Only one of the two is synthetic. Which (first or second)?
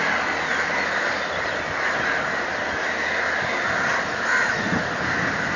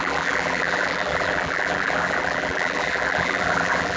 second